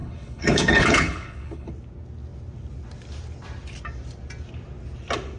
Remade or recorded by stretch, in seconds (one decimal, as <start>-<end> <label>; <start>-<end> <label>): 0.0-1.7 remade; 1.7-5.4 recorded